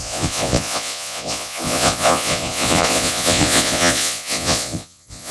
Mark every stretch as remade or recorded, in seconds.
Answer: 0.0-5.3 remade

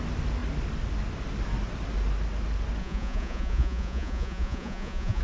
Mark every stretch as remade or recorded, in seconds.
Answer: 0.0-2.8 recorded; 2.8-5.2 remade